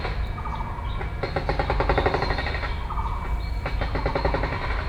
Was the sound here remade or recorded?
recorded